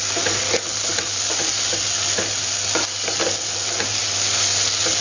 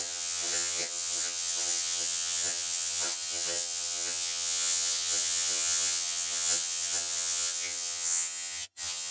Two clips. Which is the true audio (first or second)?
first